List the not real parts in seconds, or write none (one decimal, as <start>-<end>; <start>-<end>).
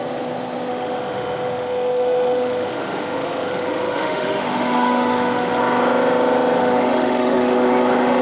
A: 0.7-5.6; 6.6-8.2